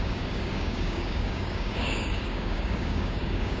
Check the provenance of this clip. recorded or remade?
remade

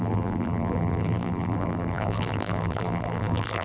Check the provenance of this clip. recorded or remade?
remade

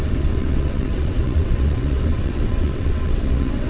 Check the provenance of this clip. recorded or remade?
remade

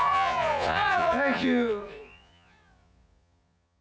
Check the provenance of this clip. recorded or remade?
remade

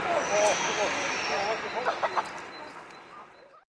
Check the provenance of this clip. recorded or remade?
recorded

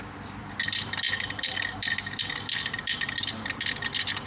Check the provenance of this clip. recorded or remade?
recorded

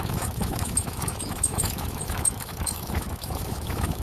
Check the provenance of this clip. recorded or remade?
remade